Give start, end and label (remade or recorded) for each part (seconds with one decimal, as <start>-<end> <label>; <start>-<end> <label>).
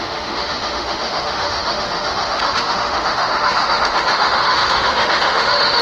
0.0-5.8 remade